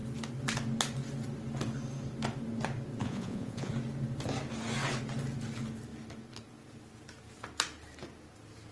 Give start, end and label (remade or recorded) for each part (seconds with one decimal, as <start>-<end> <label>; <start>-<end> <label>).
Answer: 0.0-3.0 recorded; 3.0-3.7 remade; 3.7-8.7 recorded